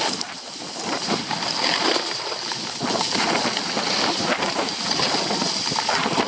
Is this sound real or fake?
real